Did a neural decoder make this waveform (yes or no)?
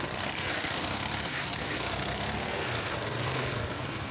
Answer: yes